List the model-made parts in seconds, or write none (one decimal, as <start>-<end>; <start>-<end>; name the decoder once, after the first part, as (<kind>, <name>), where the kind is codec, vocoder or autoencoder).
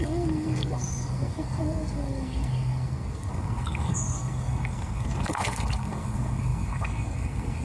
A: 0.0-7.6 (codec, SNAC)